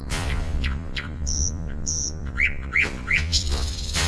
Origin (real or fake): fake